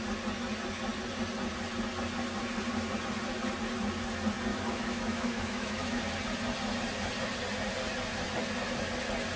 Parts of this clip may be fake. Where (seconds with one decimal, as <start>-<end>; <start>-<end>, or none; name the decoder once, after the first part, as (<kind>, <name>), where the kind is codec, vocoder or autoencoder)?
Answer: 4.5-6.0 (autoencoder, DAC-VAE)